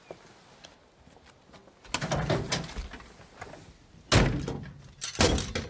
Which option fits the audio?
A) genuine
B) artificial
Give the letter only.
A